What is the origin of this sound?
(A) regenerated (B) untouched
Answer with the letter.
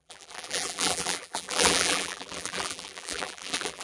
A